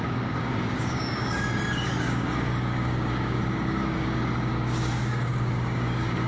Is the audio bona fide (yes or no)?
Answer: no